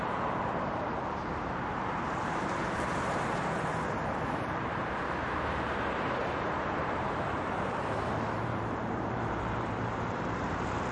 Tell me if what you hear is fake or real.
fake